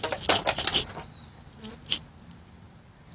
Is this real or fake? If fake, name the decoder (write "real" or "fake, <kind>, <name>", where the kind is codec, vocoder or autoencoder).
real